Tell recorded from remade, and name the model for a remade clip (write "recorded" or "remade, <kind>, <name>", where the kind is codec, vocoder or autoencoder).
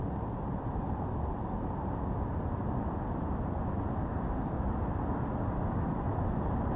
recorded